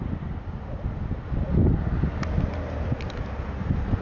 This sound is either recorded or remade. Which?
recorded